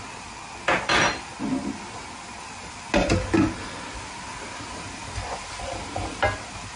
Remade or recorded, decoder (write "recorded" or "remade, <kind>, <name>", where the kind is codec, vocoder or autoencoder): recorded